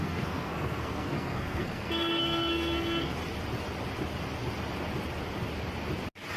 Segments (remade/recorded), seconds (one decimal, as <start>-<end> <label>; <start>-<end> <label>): 0.0-3.2 remade; 3.2-6.4 recorded